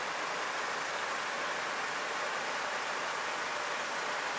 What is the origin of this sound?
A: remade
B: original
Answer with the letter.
B